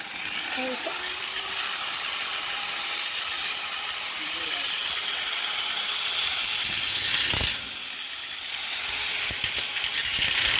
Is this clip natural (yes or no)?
yes